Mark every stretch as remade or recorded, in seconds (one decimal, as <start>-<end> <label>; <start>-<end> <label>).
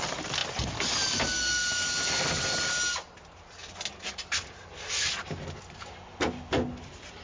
0.0-7.2 recorded